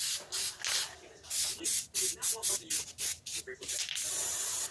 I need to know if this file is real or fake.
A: real